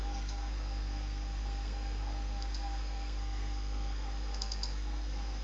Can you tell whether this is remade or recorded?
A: remade